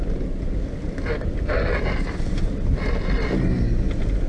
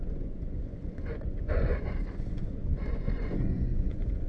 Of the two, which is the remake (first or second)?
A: second